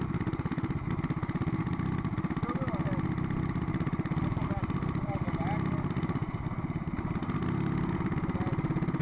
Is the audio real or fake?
real